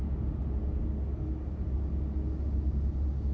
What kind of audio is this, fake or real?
real